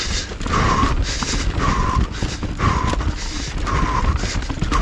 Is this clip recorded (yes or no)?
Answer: yes